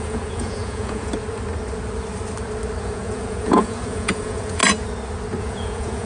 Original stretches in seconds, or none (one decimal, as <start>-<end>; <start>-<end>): 1.1-2.8; 4.6-5.4